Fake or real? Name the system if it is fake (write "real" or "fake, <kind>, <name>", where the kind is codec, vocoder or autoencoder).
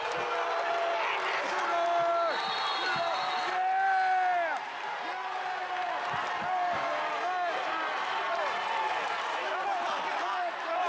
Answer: real